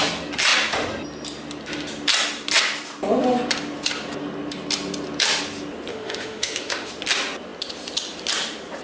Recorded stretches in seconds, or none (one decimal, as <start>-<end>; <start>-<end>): 0.0-5.9; 6.9-8.8